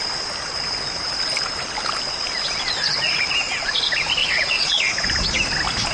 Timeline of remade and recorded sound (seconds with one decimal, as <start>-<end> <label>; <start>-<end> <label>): 0.0-4.2 recorded; 4.2-4.8 remade; 4.8-5.9 recorded